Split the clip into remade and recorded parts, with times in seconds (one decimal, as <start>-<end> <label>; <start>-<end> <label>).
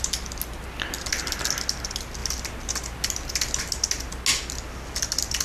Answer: 0.0-5.4 recorded